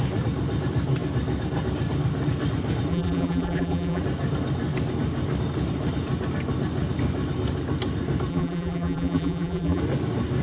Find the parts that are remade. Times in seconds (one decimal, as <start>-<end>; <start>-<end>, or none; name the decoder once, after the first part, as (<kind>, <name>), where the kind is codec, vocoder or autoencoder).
2.9-4.0 (vocoder, BigVGAN v2); 8.3-9.8